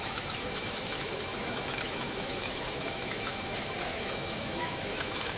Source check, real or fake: fake